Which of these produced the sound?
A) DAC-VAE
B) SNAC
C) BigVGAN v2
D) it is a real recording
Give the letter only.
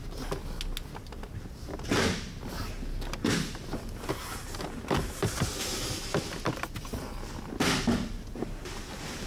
D